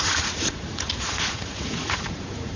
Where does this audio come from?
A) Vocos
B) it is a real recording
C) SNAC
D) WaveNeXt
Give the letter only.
A